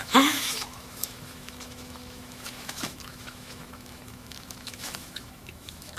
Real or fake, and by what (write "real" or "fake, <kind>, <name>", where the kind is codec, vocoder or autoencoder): fake, autoencoder, DAC-VAE